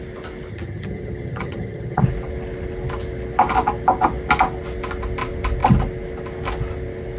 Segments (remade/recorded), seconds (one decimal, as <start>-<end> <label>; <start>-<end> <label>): 0.0-0.5 recorded; 0.5-2.0 remade; 2.0-7.2 recorded